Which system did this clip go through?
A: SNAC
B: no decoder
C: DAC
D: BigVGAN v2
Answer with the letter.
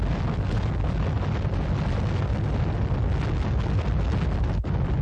B